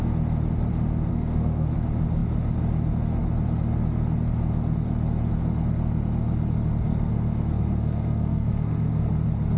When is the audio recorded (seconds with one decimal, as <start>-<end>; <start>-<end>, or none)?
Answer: 0.0-1.1; 1.7-6.9; 9.0-9.6